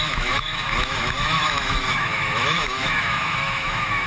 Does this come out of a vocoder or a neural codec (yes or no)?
yes